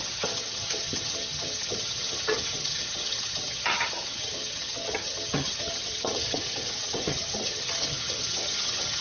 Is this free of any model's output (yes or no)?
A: no